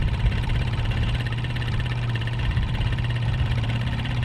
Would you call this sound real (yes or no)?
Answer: no